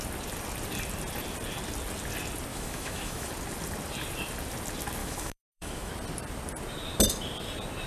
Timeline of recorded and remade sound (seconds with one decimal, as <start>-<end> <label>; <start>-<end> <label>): 0.0-2.5 recorded; 2.5-3.3 remade; 3.3-5.0 recorded; 5.0-5.9 remade; 5.9-7.9 recorded